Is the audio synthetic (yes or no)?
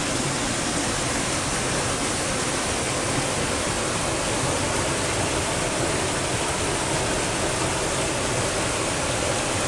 no